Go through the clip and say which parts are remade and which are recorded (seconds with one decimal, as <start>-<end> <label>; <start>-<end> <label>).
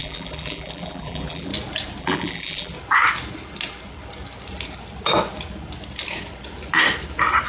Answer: 0.0-1.5 remade; 1.5-2.0 recorded; 2.0-2.7 remade; 2.7-7.5 recorded